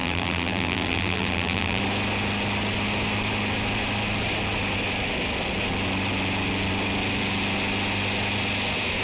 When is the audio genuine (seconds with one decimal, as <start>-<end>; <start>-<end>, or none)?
1.8-9.0